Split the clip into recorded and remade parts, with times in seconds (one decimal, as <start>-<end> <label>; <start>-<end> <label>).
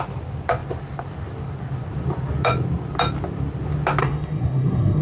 0.0-4.0 recorded; 4.0-5.0 remade